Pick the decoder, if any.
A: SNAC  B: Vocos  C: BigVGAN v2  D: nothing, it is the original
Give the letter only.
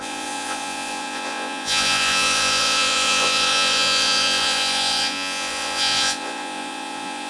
B